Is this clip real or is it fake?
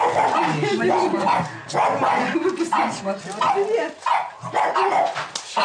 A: real